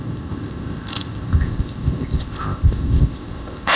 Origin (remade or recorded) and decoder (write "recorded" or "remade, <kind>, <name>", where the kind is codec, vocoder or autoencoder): remade, codec, ZipCodec